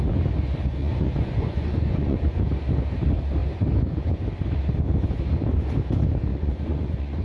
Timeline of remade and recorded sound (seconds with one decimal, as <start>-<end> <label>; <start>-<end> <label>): 0.0-0.8 recorded; 0.8-2.4 remade; 2.4-6.3 recorded; 6.3-7.2 remade